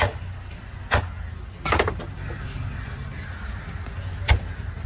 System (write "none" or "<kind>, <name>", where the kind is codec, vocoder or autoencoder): none